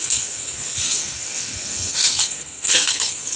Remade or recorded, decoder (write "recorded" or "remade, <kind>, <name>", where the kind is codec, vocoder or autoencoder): remade, codec, SNAC